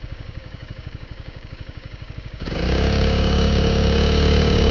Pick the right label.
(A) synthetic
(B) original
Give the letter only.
A